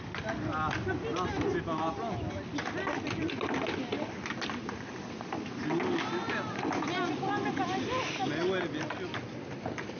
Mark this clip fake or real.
real